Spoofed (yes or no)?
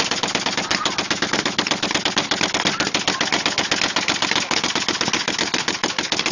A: no